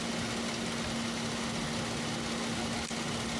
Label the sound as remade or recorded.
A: recorded